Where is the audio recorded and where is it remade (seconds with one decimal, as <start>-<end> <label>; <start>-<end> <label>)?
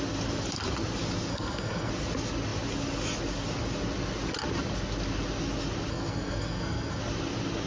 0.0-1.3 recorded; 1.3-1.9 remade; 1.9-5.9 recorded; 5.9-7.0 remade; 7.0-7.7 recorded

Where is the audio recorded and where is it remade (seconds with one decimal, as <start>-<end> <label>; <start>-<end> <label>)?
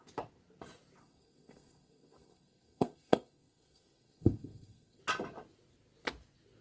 0.0-1.0 recorded; 1.0-5.0 remade; 5.0-6.6 recorded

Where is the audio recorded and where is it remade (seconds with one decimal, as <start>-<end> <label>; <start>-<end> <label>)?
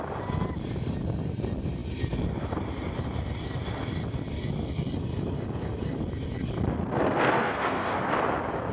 0.0-6.8 recorded; 6.8-8.0 remade; 8.0-8.7 recorded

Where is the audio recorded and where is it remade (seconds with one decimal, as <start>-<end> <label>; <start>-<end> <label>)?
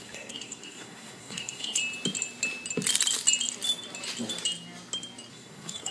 0.0-1.8 remade; 1.8-5.3 recorded; 5.3-5.9 remade